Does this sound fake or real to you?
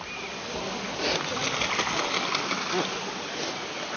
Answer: real